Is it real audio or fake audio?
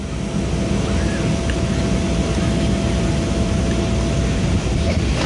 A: real